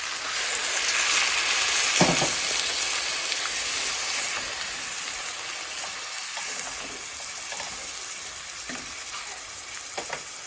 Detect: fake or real real